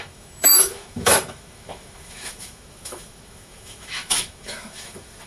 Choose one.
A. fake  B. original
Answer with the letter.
A